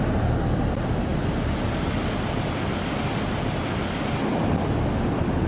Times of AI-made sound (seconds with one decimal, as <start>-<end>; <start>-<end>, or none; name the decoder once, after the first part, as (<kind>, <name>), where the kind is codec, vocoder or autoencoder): none